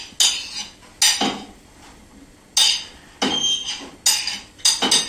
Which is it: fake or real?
real